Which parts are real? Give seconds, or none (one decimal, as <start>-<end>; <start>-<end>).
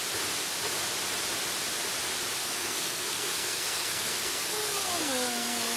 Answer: 0.0-2.4